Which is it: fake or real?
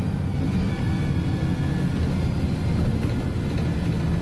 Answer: real